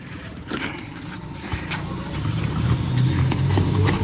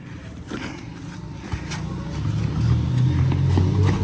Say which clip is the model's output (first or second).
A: first